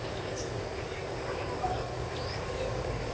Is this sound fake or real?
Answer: fake